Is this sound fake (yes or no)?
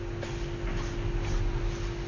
no